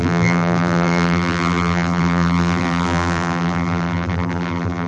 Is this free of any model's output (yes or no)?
no